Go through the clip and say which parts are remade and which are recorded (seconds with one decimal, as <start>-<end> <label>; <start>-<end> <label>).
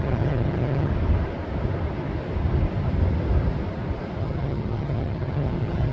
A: 0.0-0.9 remade; 0.9-4.2 recorded; 4.2-5.9 remade